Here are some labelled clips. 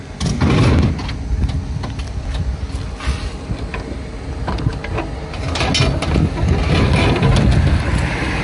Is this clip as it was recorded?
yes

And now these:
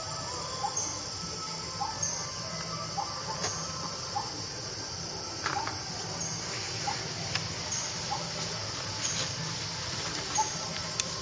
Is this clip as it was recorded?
yes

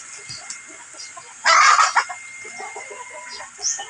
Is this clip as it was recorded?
yes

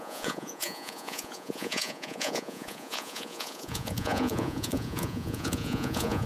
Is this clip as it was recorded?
no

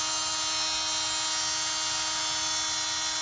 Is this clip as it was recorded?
yes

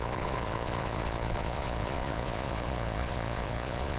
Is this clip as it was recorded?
no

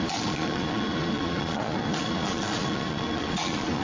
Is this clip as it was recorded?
no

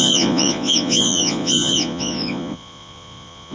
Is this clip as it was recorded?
no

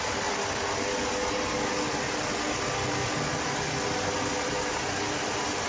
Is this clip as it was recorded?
yes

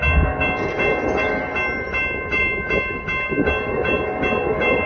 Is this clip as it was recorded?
yes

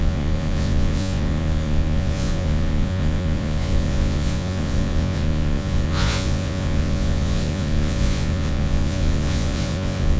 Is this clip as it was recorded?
no